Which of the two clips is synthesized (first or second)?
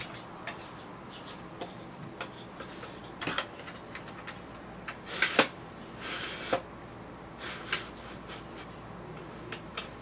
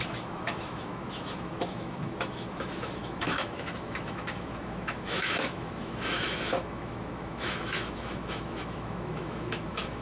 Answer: second